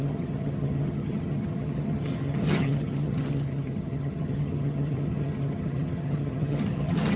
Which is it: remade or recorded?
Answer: remade